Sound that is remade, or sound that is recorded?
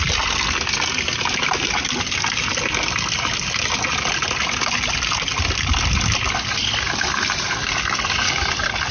recorded